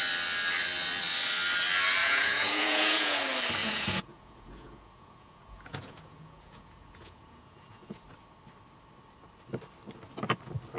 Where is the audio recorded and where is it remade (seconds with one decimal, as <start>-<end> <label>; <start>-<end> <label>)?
0.0-2.0 recorded; 2.0-3.2 remade; 3.2-3.6 recorded; 3.6-8.0 remade; 8.0-10.8 recorded